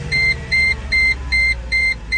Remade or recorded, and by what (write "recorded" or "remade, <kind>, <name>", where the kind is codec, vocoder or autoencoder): remade, vocoder, BigVGAN v2